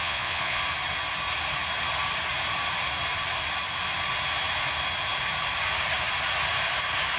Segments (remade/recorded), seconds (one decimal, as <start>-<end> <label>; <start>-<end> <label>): 0.0-0.6 remade; 0.6-7.2 recorded